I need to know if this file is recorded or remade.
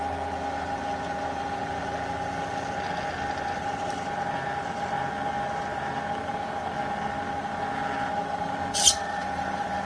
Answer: recorded